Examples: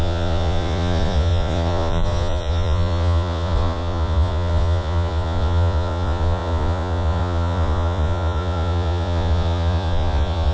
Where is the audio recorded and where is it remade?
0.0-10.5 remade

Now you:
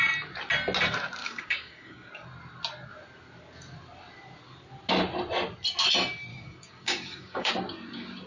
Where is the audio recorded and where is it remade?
0.0-1.2 recorded; 1.2-2.1 remade; 2.1-6.3 recorded; 6.3-7.5 remade; 7.5-8.3 recorded